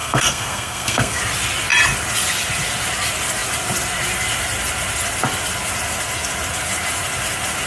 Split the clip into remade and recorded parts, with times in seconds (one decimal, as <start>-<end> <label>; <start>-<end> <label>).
0.0-1.2 remade; 1.2-7.7 recorded